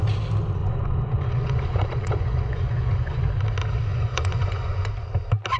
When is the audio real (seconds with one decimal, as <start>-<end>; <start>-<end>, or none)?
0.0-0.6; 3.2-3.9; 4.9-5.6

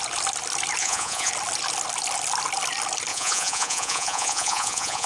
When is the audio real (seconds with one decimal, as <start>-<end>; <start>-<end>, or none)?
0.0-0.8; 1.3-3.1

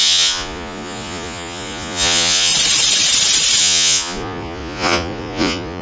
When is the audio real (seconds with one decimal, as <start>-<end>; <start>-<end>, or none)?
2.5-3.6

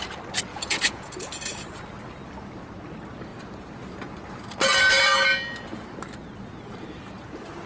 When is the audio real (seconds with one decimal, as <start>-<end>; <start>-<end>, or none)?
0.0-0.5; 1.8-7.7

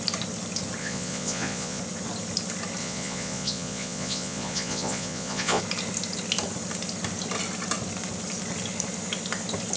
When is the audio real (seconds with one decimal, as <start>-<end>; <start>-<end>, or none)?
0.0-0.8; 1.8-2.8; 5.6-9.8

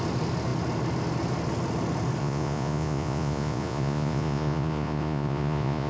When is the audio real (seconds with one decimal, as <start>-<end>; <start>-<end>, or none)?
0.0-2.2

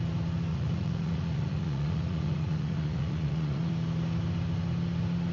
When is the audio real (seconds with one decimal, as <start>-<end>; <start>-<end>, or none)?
0.0-0.5; 3.7-5.3